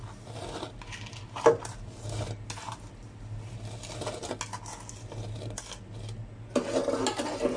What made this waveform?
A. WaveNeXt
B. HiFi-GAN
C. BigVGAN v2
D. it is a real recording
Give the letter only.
D